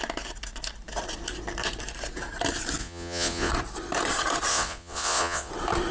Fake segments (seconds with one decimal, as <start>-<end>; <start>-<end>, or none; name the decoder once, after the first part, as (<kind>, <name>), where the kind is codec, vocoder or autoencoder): 2.8-3.5 (vocoder, Vocos); 4.5-5.5